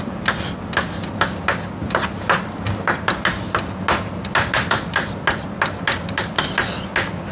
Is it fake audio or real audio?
real